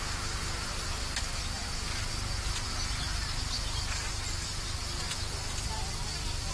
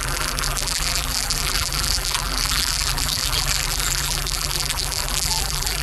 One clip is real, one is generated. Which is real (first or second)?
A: first